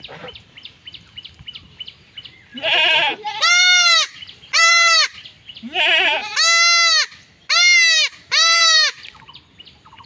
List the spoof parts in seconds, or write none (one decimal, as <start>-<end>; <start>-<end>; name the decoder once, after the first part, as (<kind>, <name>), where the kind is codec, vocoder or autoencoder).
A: 0.0-6.2 (vocoder, BigVGAN v2); 8.1-10.1

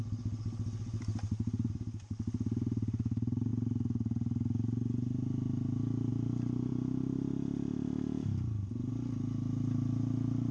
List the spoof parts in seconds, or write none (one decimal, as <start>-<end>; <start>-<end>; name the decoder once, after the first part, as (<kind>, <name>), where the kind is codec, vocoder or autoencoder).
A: none

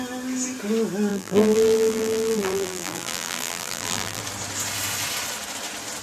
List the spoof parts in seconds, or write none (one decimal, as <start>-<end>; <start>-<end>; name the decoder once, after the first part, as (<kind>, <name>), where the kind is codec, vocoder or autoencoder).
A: 1.1-4.2 (vocoder, BigVGAN v2)

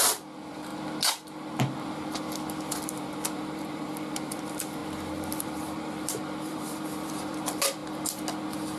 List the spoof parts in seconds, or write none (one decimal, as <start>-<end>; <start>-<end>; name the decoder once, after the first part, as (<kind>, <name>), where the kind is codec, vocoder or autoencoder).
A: 0.0-0.7 (vocoder, BigVGAN v2); 2.7-4.8; 5.4-7.8

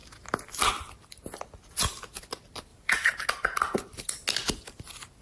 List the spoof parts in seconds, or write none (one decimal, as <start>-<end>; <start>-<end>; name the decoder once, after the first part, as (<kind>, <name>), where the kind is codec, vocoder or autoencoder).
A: 2.7-3.3 (vocoder, BigVGAN v2)

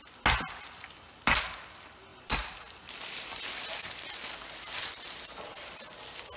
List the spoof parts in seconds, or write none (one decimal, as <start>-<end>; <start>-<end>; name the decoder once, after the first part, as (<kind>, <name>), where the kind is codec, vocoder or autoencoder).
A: 2.1-3.7 (vocoder, BigVGAN v2)

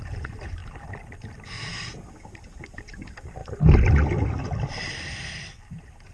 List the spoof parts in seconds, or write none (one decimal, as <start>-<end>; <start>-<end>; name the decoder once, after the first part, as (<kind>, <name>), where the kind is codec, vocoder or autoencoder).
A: 0.6-1.2 (vocoder, BigVGAN v2)